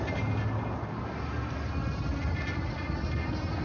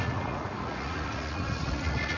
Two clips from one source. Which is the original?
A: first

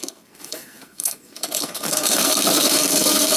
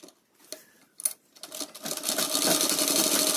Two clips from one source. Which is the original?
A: second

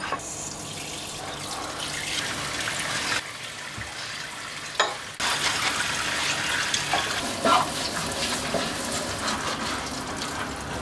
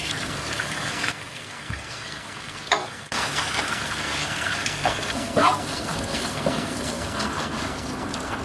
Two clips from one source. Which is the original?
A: first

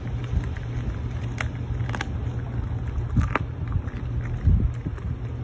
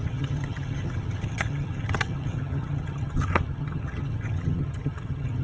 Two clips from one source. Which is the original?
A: first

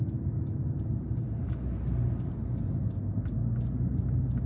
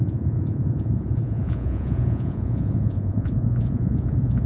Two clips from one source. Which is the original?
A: first